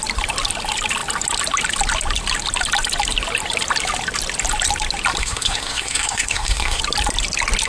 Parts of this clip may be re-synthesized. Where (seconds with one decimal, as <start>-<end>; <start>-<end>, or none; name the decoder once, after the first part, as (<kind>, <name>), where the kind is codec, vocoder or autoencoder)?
5.2-6.8 (codec, SNAC)